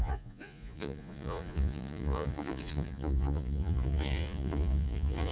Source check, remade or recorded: remade